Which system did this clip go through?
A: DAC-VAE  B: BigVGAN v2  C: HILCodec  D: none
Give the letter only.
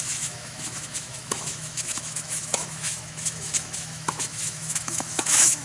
A